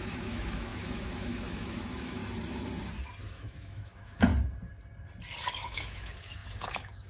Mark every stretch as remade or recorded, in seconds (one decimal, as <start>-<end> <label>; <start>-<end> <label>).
0.0-2.2 remade; 2.2-3.2 recorded; 3.2-4.3 remade; 4.3-5.5 recorded; 5.5-7.1 remade